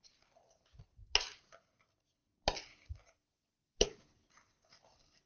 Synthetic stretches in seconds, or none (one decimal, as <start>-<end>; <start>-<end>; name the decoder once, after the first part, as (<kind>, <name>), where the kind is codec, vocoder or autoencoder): none